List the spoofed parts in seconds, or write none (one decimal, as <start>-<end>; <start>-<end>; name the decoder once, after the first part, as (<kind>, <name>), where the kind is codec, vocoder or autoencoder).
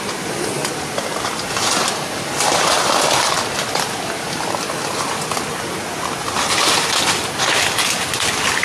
none